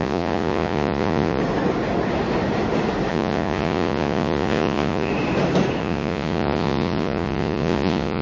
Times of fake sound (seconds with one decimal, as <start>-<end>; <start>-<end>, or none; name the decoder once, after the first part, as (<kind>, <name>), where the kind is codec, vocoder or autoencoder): 0.0-1.4 (vocoder, Vocos); 3.1-5.1; 5.8-8.2